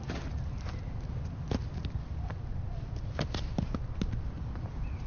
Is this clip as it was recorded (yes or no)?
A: yes